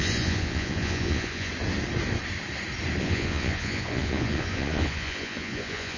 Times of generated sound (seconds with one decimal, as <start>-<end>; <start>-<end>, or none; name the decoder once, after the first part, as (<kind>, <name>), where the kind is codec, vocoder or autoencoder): 0.0-1.5 (vocoder, Vocos); 3.0-6.0